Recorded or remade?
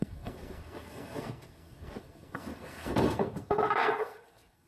remade